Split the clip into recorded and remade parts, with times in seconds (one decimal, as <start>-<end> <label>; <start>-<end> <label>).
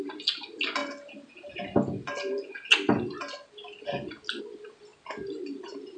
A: 0.0-6.0 recorded